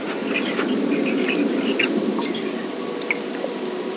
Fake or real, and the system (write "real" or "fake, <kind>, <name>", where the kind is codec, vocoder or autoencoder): real